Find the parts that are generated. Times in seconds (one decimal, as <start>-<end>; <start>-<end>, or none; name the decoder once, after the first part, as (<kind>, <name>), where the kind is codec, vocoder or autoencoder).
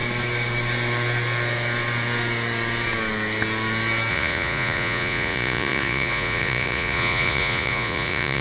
4.1-8.4 (vocoder, Vocos)